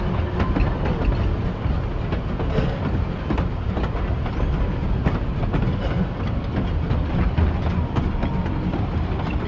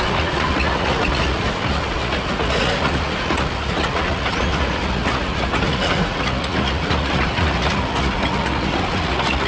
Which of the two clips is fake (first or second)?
second